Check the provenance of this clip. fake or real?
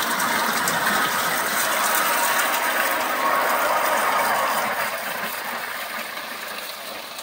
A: real